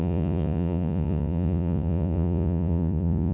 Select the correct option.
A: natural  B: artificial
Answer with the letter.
B